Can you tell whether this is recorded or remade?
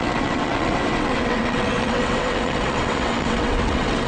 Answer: remade